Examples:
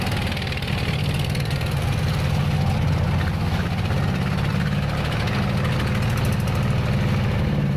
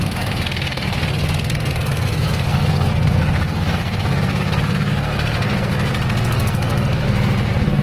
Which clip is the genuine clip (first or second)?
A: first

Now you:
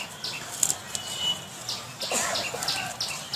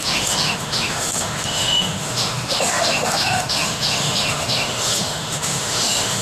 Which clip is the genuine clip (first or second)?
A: first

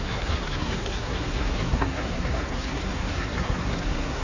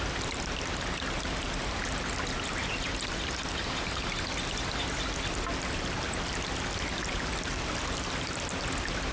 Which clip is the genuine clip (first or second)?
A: second